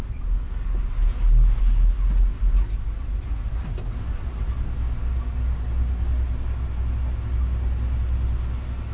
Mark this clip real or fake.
real